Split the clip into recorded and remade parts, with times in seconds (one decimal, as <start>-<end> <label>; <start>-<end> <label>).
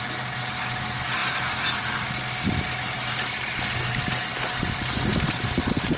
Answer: 0.0-6.0 recorded